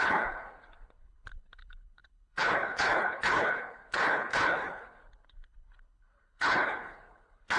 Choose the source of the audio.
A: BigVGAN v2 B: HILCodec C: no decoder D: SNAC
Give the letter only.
B